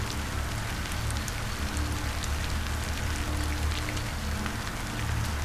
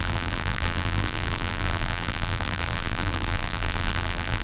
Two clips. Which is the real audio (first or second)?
first